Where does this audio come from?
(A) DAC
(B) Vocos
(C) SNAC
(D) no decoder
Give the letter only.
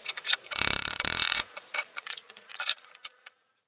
B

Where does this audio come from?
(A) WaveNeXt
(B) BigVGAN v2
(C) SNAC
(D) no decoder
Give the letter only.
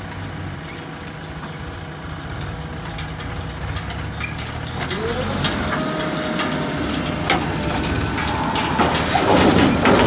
D